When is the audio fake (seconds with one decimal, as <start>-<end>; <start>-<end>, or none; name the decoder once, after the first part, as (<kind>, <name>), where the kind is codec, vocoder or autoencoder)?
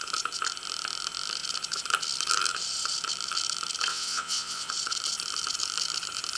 3.9-4.7 (vocoder, WaveNeXt)